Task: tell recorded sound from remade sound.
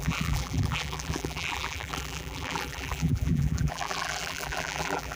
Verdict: remade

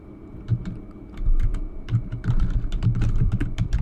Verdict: remade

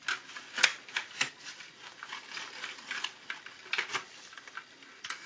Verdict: recorded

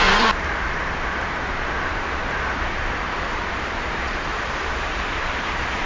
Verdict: remade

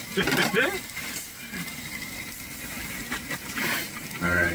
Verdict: remade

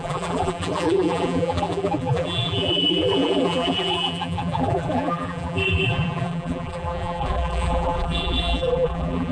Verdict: remade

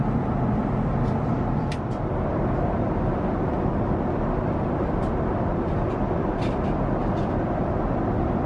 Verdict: recorded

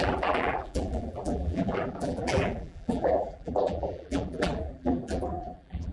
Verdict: remade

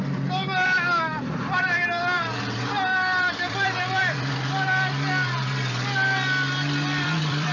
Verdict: remade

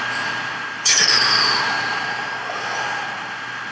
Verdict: remade